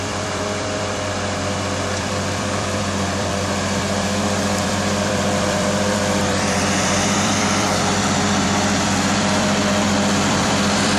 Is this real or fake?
fake